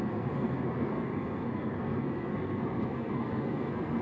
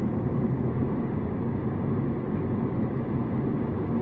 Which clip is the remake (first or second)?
first